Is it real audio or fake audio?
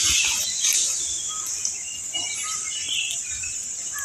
real